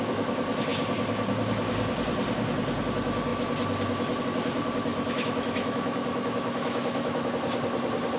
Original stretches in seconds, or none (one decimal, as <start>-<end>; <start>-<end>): 0.0-4.9; 7.3-8.2